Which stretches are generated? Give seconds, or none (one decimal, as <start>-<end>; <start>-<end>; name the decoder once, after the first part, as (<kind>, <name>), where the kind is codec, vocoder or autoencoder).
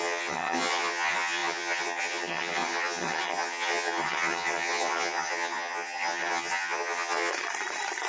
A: 0.0-7.3 (vocoder, HiFi-GAN)